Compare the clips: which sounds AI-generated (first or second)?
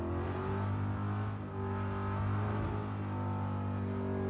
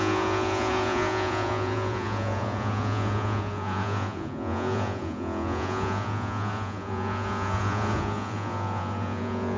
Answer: second